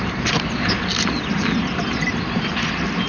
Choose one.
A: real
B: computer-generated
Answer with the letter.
A